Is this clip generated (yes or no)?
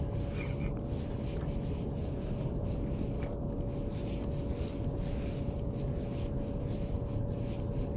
no